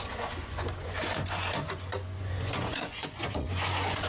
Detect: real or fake fake